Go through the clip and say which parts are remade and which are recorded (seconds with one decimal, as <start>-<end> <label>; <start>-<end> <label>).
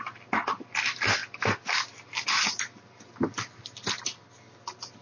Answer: 0.0-5.0 recorded